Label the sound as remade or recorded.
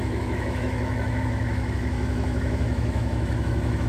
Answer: remade